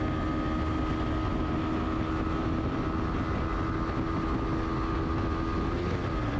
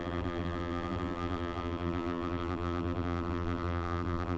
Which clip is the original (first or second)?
first